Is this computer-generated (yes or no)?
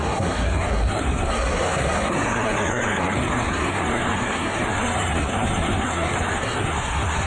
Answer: yes